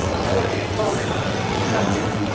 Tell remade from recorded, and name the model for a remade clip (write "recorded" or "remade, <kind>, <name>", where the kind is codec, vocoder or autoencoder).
remade, vocoder, WaveNeXt